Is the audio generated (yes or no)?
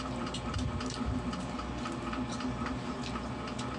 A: no